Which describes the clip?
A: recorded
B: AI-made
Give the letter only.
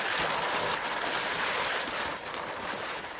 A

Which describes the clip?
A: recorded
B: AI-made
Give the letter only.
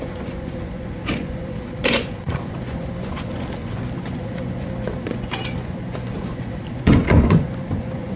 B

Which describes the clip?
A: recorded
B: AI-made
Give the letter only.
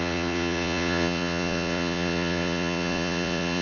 B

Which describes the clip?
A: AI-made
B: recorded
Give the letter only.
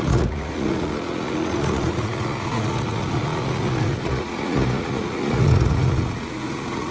A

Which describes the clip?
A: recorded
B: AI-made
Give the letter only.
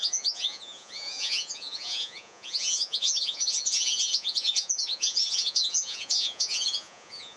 B